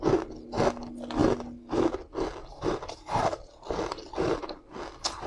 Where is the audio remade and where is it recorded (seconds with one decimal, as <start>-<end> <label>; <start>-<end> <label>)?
0.0-2.4 recorded; 2.4-4.6 remade; 4.6-5.3 recorded